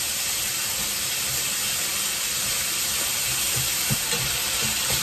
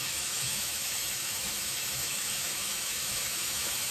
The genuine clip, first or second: first